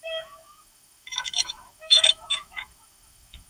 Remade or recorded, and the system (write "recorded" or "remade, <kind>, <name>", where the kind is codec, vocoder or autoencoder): remade, autoencoder, DAC-VAE